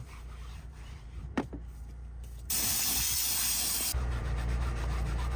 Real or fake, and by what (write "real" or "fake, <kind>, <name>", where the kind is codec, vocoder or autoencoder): fake, vocoder, BigVGAN v2